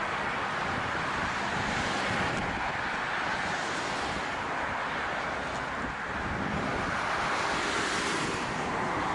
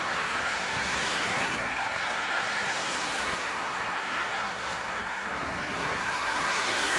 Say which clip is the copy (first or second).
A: second